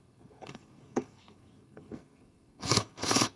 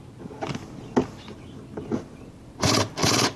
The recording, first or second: second